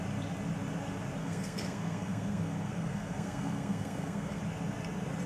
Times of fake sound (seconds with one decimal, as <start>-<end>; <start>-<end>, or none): 1.2-4.4